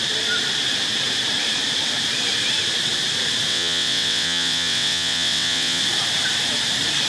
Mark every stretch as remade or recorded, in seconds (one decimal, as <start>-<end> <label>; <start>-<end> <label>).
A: 0.0-3.5 recorded; 3.5-5.8 remade; 5.8-7.1 recorded